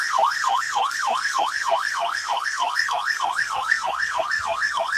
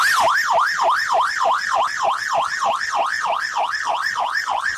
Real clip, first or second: second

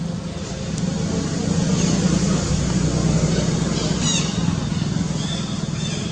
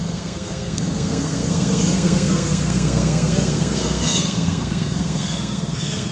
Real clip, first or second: first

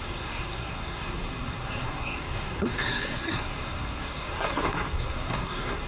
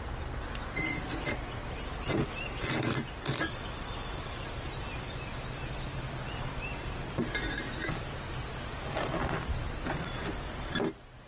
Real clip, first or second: second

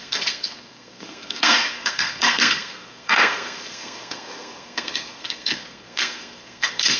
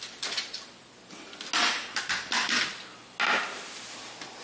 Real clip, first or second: second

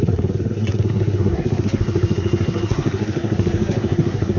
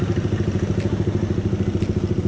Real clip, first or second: second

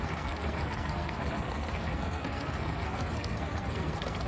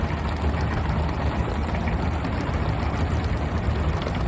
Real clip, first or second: second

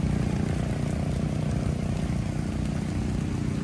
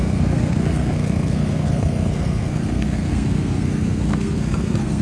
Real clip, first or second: first